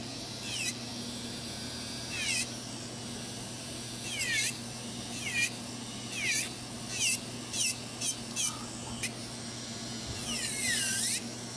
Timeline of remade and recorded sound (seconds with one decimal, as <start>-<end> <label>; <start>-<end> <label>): 0.0-11.6 recorded